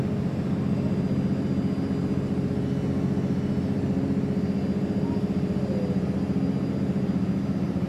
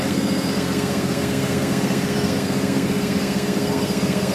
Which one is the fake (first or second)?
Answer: second